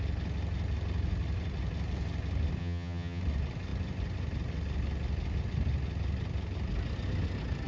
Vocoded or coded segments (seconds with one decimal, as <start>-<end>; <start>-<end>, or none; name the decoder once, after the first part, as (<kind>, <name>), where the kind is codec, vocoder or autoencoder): 2.6-3.2 (vocoder, HiFi-GAN)